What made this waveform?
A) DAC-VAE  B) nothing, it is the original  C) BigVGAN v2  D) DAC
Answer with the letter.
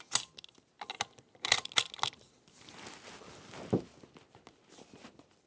B